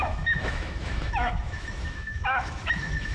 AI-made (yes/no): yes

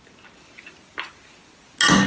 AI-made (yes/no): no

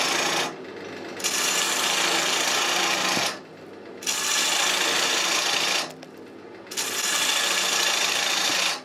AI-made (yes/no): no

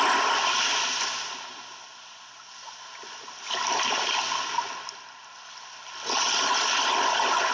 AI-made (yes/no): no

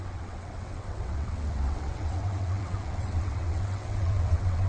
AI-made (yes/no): yes